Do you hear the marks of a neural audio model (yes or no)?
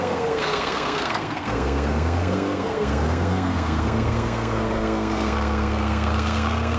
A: yes